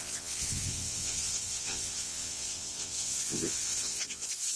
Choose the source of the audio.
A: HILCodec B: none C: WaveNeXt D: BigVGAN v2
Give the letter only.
C